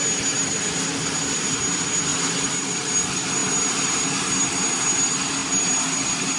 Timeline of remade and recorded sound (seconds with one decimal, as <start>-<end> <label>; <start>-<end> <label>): 0.0-6.4 recorded